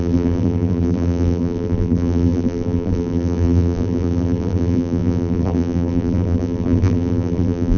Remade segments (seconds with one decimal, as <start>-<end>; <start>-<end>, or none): 0.0-7.8